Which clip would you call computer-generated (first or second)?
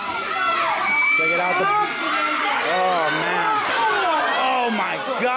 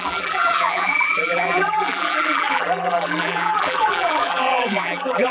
second